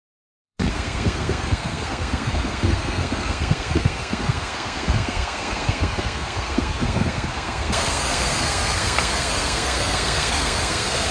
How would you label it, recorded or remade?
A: remade